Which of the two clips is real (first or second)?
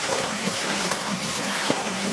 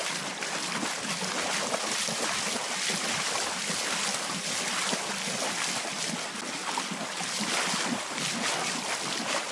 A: second